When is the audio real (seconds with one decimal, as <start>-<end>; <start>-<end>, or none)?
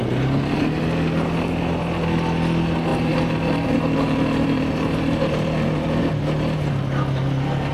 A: 0.0-2.9; 6.0-7.7